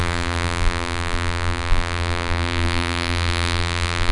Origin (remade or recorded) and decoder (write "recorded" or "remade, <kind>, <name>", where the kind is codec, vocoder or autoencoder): remade, vocoder, BigVGAN v2